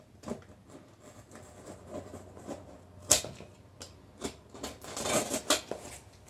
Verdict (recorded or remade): recorded